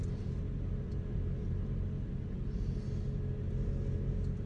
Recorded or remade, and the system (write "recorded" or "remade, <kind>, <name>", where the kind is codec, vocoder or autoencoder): recorded